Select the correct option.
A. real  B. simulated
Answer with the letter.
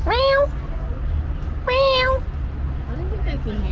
A